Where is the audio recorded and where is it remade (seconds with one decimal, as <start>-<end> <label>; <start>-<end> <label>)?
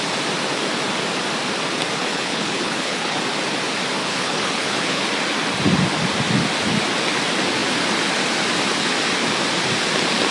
0.0-2.0 recorded; 2.0-3.2 remade; 3.2-4.0 recorded; 4.0-5.1 remade; 5.1-10.3 recorded